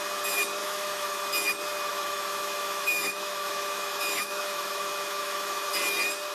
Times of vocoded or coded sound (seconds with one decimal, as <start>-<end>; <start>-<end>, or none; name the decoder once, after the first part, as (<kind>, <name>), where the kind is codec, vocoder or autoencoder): 0.6-1.2 (autoencoder, DAC-VAE); 1.9-5.7